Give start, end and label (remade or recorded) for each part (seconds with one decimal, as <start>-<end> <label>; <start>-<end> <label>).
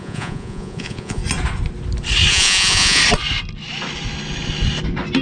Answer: 0.0-1.2 remade; 1.2-2.3 recorded; 2.3-3.0 remade; 3.0-5.2 recorded